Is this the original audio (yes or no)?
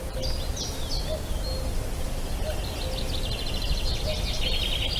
yes